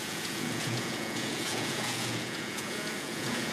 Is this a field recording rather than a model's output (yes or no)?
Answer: no